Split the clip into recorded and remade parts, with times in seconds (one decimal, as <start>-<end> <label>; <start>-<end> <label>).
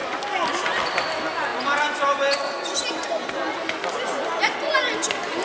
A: 0.0-5.4 recorded